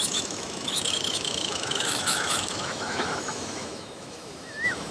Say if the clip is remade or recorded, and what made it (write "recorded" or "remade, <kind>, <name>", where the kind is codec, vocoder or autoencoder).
remade, autoencoder, DAC-VAE